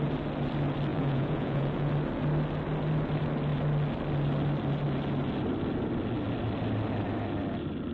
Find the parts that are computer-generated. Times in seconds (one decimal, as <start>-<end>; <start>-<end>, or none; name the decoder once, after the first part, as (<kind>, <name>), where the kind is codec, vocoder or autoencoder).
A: 0.9-1.9 (vocoder, Vocos)